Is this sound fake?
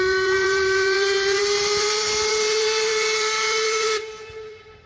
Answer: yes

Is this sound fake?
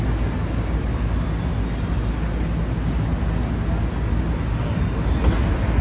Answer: no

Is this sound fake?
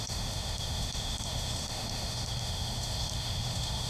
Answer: yes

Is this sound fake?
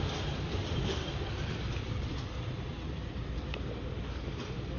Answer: no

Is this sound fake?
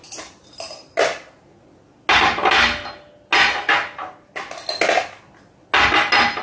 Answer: no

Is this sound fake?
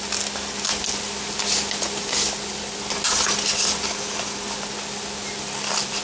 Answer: no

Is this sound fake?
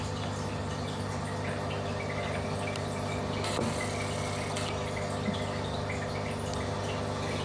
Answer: no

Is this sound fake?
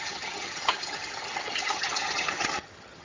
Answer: yes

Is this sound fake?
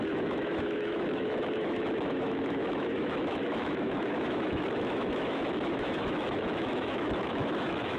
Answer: yes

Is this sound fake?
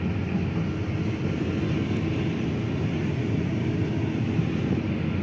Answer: no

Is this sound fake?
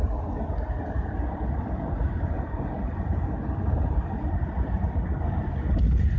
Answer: no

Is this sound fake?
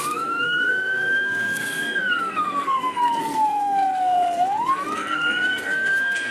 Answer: yes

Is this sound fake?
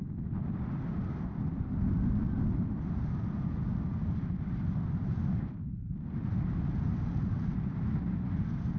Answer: no